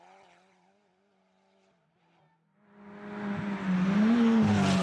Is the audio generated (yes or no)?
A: no